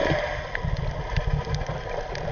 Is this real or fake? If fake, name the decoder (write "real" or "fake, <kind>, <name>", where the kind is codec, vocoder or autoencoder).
real